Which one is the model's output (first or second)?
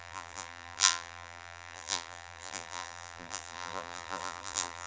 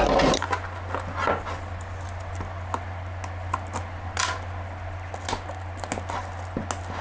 first